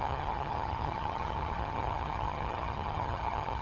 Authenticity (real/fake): fake